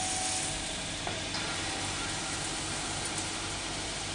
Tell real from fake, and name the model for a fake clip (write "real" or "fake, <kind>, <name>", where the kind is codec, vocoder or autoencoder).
real